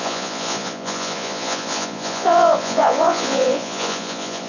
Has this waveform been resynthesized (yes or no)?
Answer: yes